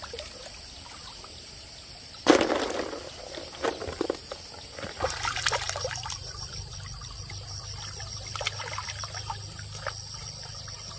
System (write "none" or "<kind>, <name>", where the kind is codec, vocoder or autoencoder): none